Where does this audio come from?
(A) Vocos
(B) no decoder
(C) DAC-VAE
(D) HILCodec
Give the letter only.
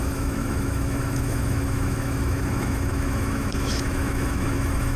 C